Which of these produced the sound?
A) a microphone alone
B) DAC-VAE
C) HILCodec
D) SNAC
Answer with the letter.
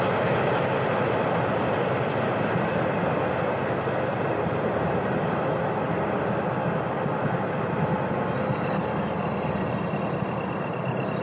A